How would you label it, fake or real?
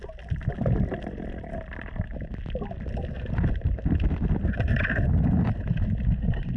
real